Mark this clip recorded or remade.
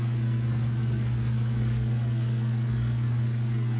remade